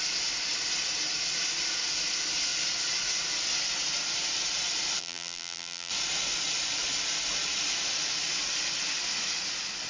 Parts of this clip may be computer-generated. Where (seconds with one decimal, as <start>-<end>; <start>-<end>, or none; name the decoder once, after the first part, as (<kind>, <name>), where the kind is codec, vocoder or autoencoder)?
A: 5.0-5.9 (vocoder, BigVGAN v2)